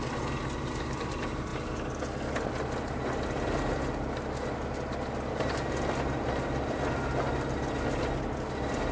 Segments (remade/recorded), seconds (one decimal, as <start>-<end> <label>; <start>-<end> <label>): 0.0-8.9 recorded